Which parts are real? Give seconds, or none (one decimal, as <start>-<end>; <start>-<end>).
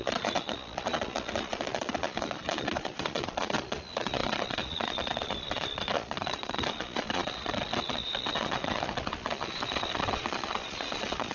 none